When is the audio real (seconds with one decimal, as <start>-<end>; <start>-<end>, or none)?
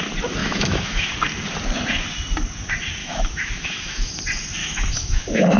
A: 0.0-0.4; 1.1-3.0; 4.1-4.6